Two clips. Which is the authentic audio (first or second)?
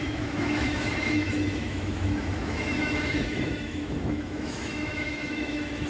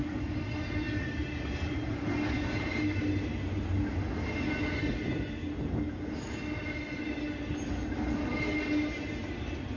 second